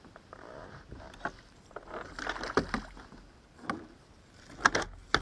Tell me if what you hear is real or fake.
real